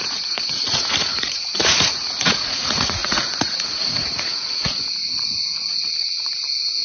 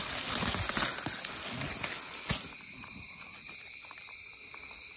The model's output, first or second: first